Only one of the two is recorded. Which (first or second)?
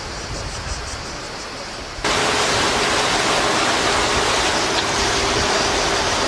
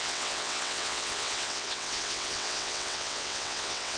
first